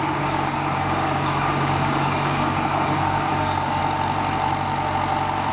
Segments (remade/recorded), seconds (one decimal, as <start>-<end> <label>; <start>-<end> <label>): 0.0-3.8 remade; 3.8-5.5 recorded